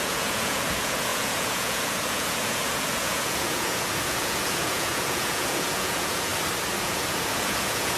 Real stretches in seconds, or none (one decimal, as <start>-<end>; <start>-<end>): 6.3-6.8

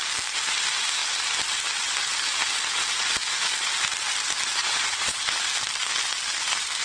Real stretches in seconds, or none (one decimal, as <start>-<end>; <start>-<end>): 0.0-4.6; 5.2-6.8

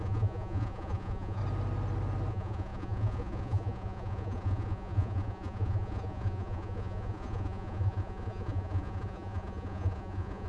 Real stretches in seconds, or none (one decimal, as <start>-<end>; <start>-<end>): 1.4-2.3

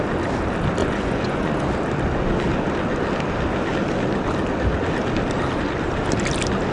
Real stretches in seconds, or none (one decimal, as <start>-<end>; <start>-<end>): 0.0-0.8; 1.6-6.7